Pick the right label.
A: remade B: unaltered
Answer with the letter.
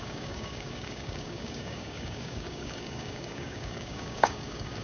A